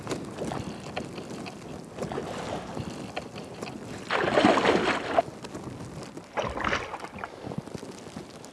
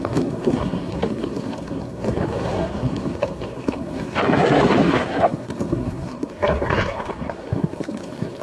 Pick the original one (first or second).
first